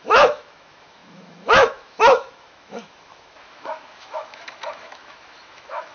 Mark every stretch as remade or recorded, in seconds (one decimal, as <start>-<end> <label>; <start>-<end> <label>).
0.0-5.9 remade